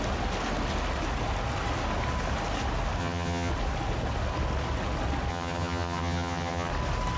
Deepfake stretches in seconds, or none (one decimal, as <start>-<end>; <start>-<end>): 3.0-3.5; 5.3-6.7